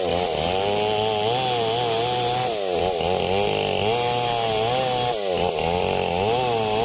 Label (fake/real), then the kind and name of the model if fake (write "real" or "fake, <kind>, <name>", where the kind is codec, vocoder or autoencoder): real